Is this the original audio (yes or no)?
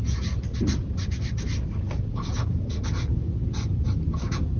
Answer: yes